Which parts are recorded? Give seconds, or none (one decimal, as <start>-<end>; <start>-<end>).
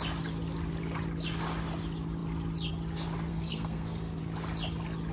0.0-3.3; 4.2-5.1